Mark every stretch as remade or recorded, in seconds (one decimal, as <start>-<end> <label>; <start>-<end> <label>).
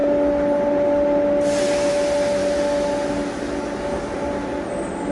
0.0-5.1 recorded